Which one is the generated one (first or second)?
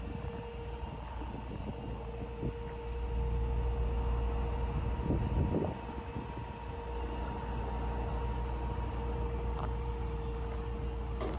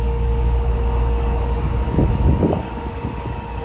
second